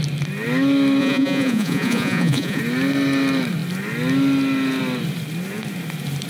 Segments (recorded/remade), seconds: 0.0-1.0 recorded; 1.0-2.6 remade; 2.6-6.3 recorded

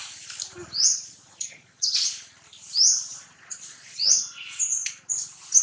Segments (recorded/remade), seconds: 0.0-0.9 recorded; 0.9-2.1 remade; 2.1-3.1 recorded; 3.1-4.2 remade; 4.2-5.6 recorded

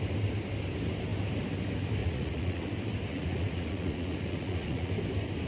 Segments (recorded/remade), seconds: 0.0-2.0 recorded; 2.0-2.7 remade; 2.7-3.1 recorded; 3.1-4.9 remade; 4.9-5.5 recorded

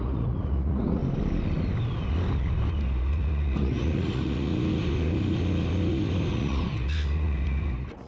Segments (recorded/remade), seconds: 0.0-1.0 remade; 1.0-3.1 recorded; 3.1-4.5 remade; 4.5-6.3 recorded; 6.3-8.1 remade

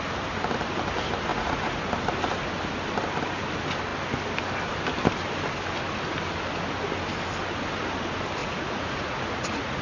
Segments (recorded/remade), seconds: 0.0-1.3 recorded; 1.3-1.9 remade; 1.9-8.4 recorded; 8.4-9.8 remade

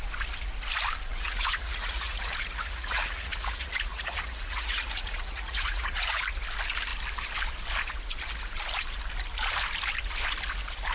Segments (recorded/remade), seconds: 0.0-1.1 recorded; 1.1-6.2 remade; 6.2-10.9 recorded